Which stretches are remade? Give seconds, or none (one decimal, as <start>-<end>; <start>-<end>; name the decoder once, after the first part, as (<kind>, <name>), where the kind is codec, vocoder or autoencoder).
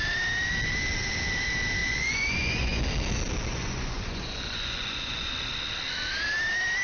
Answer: 1.8-2.8 (vocoder, Vocos); 3.5-5.3